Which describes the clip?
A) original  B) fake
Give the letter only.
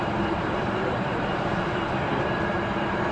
B